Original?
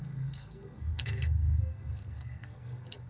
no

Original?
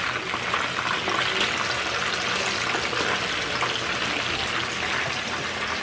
yes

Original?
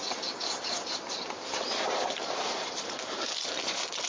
no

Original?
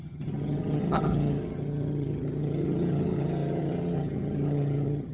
no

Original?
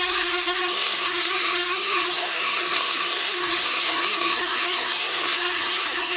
no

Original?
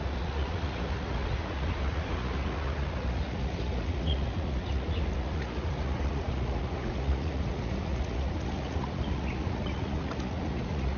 no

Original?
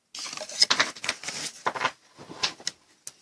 yes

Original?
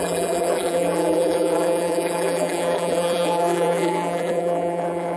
no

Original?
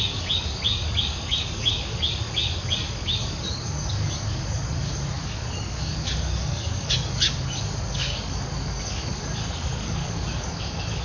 no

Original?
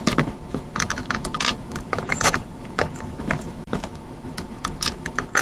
no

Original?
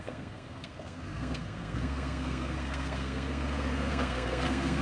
no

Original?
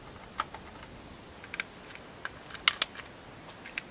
yes